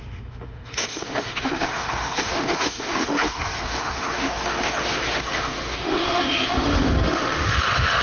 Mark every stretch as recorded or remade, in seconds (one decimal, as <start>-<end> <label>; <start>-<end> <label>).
0.0-8.0 remade